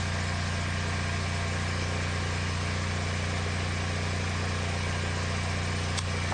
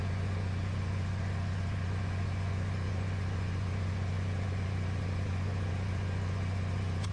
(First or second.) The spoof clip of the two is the second